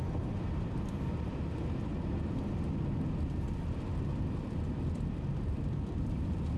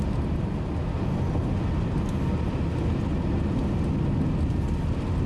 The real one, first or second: second